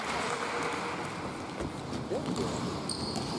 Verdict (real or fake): real